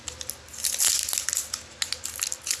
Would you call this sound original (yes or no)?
yes